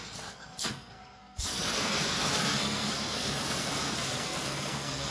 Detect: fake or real fake